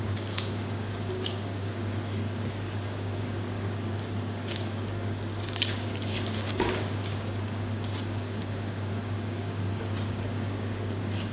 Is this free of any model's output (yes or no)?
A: no